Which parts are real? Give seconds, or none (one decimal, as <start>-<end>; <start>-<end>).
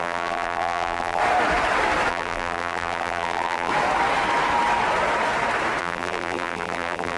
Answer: 1.2-2.1; 3.7-5.8